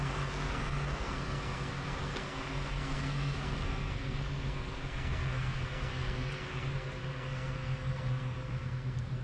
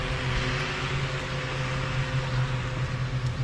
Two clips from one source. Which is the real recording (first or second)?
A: second